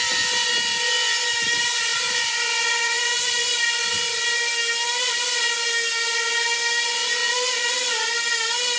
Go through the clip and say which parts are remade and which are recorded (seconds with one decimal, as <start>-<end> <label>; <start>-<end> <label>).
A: 0.0-1.9 recorded; 1.9-3.6 remade; 3.6-8.8 recorded